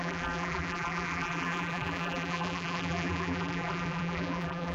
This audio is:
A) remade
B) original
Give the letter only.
A